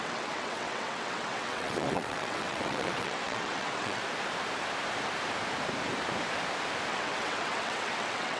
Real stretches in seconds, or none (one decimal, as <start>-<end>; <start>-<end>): 4.0-6.9